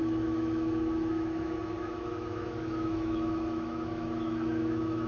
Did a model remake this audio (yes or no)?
yes